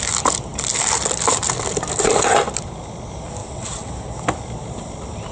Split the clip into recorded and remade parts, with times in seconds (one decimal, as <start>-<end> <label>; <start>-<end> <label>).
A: 0.0-3.4 recorded; 3.4-3.9 remade; 3.9-5.3 recorded